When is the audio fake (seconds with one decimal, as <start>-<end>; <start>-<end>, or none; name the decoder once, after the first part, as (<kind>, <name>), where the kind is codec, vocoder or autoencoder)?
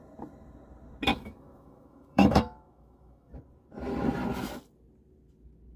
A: 1.1-3.4 (autoencoder, DAC-VAE)